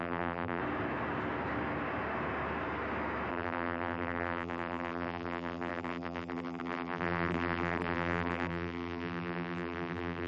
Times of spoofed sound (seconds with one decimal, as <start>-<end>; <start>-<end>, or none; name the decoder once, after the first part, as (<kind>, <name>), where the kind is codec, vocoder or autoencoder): 0.0-0.6 (vocoder, BigVGAN v2); 3.3-10.3